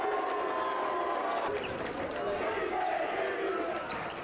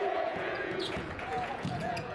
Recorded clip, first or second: first